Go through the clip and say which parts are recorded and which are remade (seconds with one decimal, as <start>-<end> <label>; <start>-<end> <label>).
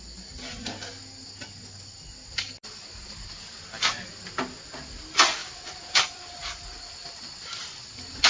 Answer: 0.0-5.4 recorded; 5.4-8.3 remade